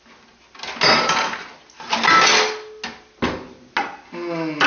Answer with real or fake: real